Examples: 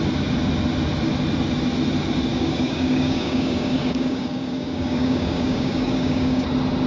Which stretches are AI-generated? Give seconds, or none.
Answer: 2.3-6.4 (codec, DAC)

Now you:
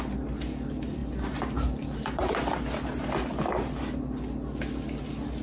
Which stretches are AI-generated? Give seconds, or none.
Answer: none

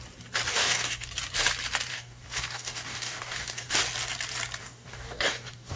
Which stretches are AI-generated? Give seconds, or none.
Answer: 0.5-1.1 (codec, DAC); 1.9-3.8; 4.6-5.8

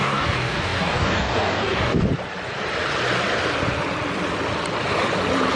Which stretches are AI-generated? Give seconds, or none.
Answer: 0.0-2.1 (codec, DAC)

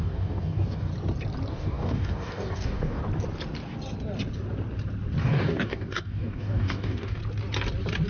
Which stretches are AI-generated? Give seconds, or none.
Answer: 0.0-0.9 (codec, DAC); 1.5-3.0; 5.2-7.2

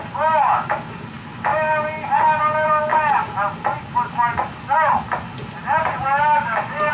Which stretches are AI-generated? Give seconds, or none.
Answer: 5.8-6.9 (codec, DAC)